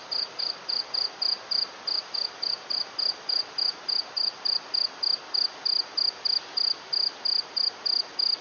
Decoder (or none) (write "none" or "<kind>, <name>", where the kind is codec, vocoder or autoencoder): none